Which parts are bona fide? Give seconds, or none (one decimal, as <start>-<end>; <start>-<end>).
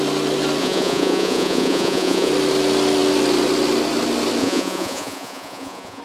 0.0-0.6; 2.3-4.4